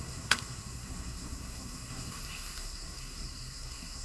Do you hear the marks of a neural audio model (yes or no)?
yes